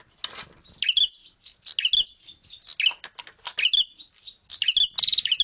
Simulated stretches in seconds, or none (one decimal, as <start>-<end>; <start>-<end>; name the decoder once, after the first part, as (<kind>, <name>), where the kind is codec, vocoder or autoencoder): none